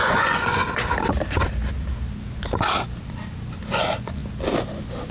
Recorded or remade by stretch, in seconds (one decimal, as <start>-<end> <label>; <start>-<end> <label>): 0.0-0.6 remade; 0.6-3.7 recorded; 3.7-4.2 remade; 4.2-5.1 recorded